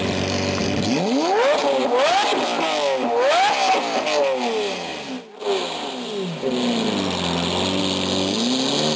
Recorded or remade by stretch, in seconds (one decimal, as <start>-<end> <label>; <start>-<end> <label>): 0.0-9.0 recorded